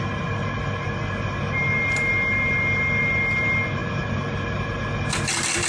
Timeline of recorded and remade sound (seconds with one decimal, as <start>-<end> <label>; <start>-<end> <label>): 0.0-5.7 recorded

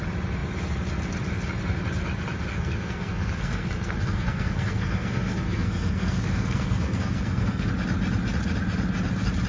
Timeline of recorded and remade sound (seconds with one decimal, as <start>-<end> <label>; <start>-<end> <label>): 0.0-2.5 recorded; 2.5-7.7 remade; 7.7-9.5 recorded

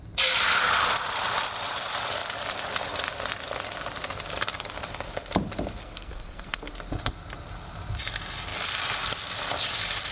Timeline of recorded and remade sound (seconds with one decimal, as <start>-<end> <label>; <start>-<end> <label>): 0.0-5.8 recorded; 5.8-6.7 remade; 6.7-10.1 recorded

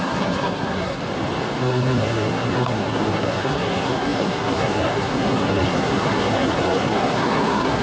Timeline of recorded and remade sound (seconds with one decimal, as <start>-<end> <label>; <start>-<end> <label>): 0.0-1.0 remade; 1.0-1.6 recorded; 1.6-7.8 remade

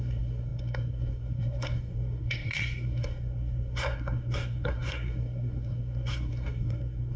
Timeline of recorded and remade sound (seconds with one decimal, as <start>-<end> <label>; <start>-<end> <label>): 0.0-7.2 remade